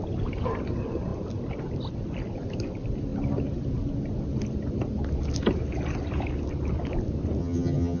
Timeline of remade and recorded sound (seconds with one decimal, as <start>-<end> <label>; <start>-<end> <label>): 0.0-7.4 recorded; 7.4-8.0 remade